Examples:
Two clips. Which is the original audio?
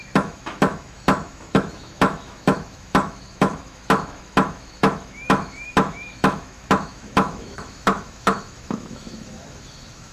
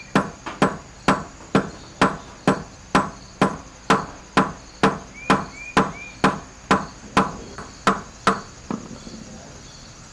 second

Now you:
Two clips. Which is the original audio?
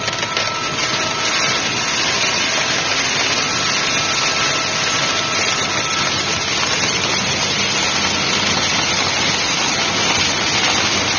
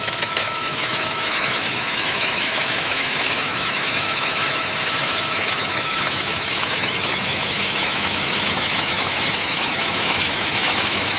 first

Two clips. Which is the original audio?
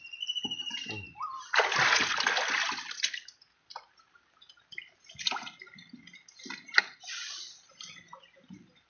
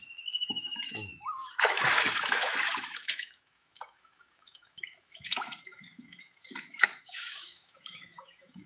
first